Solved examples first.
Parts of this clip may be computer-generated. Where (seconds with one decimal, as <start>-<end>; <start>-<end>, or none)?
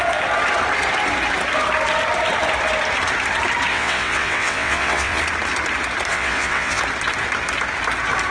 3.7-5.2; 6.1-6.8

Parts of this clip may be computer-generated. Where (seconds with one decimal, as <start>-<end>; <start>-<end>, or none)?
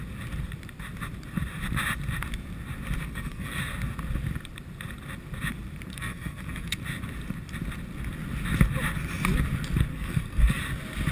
3.0-3.6; 5.9-6.8; 9.9-10.6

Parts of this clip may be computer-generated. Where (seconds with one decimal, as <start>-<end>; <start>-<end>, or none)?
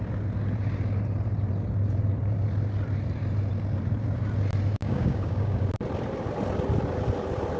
4.8-5.6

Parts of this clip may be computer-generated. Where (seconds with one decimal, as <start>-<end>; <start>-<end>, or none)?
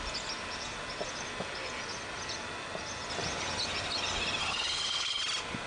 4.4-5.2